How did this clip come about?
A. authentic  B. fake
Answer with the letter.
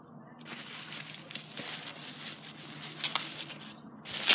A